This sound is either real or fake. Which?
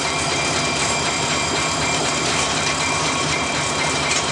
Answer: fake